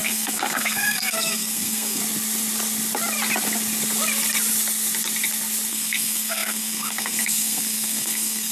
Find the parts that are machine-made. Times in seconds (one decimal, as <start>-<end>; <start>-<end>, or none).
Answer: 0.0-2.0; 5.7-8.5